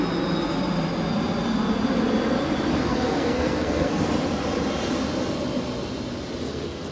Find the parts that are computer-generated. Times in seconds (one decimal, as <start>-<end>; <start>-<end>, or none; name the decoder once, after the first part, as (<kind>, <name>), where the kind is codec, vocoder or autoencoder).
2.7-4.0 (codec, SNAC); 6.4-6.9